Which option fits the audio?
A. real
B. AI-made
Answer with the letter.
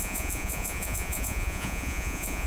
B